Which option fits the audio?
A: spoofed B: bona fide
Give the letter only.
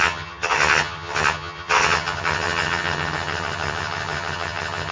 A